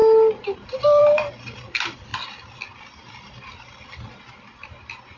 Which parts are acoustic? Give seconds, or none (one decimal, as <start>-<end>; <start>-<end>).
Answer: 0.0-5.2